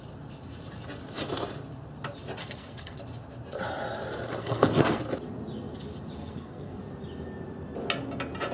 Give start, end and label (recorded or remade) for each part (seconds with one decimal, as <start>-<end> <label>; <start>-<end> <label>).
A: 0.0-2.4 recorded; 2.4-3.0 remade; 3.0-4.4 recorded; 4.4-5.0 remade; 5.0-6.2 recorded; 6.2-6.8 remade; 6.8-8.5 recorded